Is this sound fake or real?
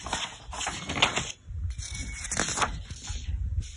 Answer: real